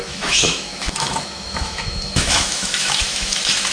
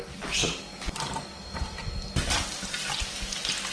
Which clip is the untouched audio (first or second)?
second